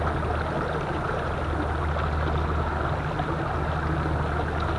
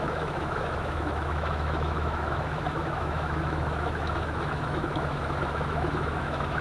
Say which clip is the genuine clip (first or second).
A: first